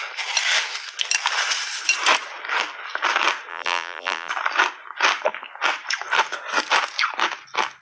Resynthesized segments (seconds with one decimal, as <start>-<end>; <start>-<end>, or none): 3.5-4.3